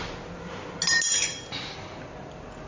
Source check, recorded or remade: recorded